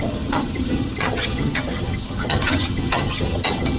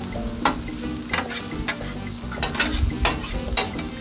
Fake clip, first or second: first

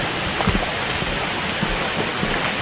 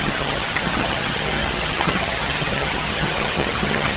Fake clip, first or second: second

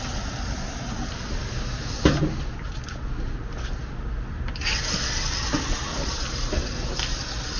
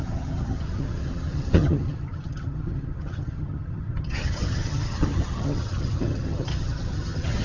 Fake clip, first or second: second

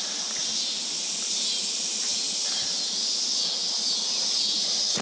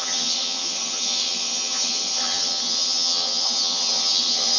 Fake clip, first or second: second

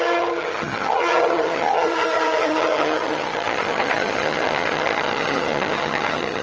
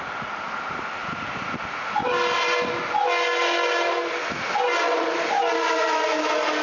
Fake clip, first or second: first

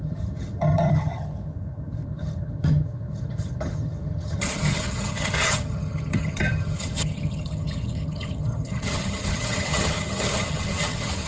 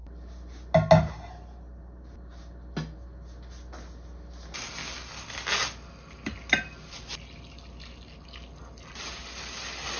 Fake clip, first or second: first